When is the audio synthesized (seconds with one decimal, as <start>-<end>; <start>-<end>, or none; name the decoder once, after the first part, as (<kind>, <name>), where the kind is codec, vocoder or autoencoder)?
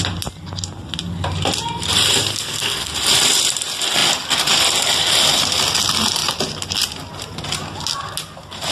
2.3-2.9 (codec, SNAC)